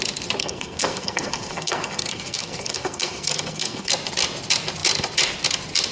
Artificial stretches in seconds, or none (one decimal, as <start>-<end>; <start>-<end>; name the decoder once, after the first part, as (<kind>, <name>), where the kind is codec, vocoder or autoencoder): 0.4-3.9 (codec, SNAC)